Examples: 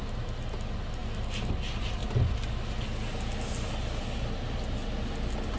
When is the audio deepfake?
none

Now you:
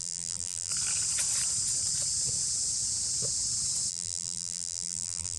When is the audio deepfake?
0.0-0.7 (vocoder, BigVGAN v2); 3.9-5.4

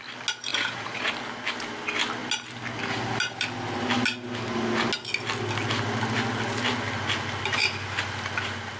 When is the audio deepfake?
0.5-1.1 (vocoder, Vocos)

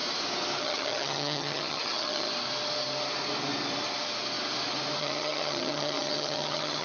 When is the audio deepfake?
0.6-2.3 (vocoder, HiFi-GAN); 5.0-6.8

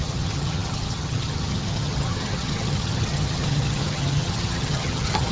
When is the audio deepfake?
0.0-5.3 (vocoder, HiFi-GAN)

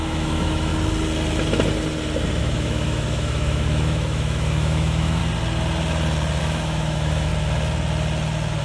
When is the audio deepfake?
0.0-0.7 (autoencoder, DAC-VAE); 2.4-5.2; 6.4-7.3